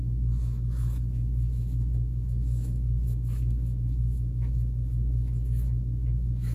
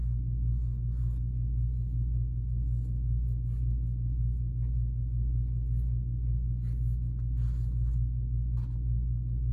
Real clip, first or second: second